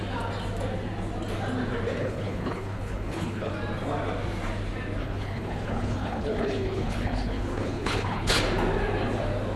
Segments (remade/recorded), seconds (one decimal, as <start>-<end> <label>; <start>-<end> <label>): 0.0-2.0 recorded; 2.0-3.5 remade; 3.5-5.0 recorded; 5.0-8.4 remade; 8.4-9.6 recorded

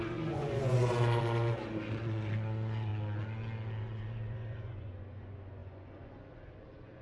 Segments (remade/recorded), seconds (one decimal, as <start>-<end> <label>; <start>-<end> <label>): 0.0-2.9 remade; 2.9-3.8 recorded; 3.8-7.0 remade

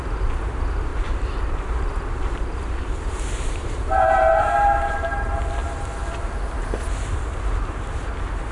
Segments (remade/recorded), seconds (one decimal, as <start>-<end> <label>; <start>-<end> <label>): 0.0-0.9 recorded; 0.9-5.3 remade; 5.3-8.5 recorded

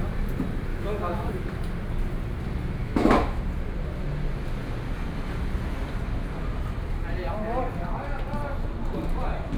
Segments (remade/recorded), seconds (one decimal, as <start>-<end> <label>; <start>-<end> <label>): 0.0-0.7 recorded; 0.7-1.3 remade; 1.3-2.8 recorded; 2.8-3.4 remade; 3.4-9.6 recorded

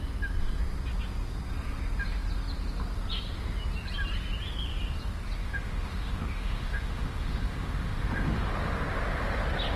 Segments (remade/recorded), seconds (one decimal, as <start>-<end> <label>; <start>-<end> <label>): 0.0-5.4 recorded; 5.4-8.5 remade; 8.5-9.8 recorded

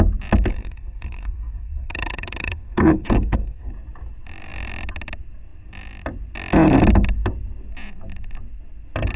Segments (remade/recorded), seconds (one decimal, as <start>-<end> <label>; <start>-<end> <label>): 0.0-0.5 recorded; 0.5-3.7 remade; 3.7-9.2 recorded

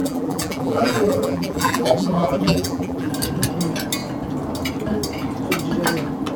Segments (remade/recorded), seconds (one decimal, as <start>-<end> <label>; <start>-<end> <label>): 0.0-3.1 remade; 3.1-6.4 recorded